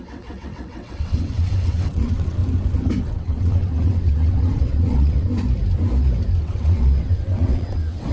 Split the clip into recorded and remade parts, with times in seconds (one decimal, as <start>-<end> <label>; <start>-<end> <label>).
0.0-2.4 remade; 2.4-3.0 recorded; 3.0-5.3 remade; 5.3-6.4 recorded; 6.4-8.1 remade